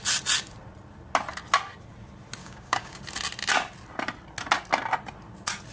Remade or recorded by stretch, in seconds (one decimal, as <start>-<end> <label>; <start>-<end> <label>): 0.0-2.4 recorded; 2.4-3.0 remade; 3.0-5.7 recorded